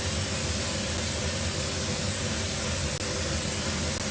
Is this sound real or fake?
real